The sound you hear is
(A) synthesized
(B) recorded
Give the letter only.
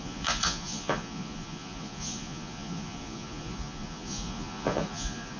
A